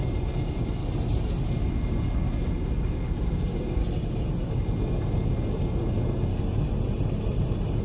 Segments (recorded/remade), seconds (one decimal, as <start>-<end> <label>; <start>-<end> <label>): 0.0-0.8 remade; 0.8-1.5 recorded; 1.5-3.8 remade; 3.8-4.5 recorded; 4.5-6.3 remade; 6.3-7.8 recorded